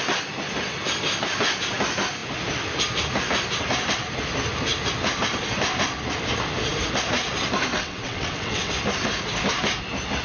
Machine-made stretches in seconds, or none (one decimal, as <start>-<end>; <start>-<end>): 7.7-8.7